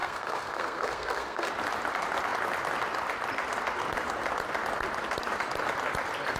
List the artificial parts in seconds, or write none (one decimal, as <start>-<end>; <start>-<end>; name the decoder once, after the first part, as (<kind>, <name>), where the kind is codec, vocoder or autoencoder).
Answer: 0.0-1.5 (codec, SNAC)